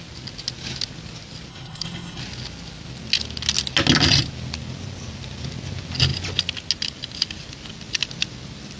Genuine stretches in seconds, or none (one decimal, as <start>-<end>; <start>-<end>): 0.0-1.5; 2.2-8.8